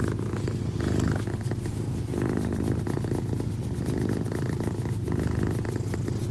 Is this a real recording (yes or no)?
yes